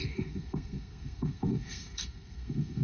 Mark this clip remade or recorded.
remade